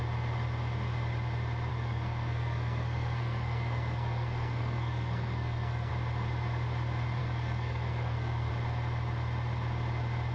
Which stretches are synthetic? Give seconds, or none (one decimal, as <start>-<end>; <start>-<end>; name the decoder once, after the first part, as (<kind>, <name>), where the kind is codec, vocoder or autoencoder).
1.7-5.9 (codec, SNAC); 7.2-8.5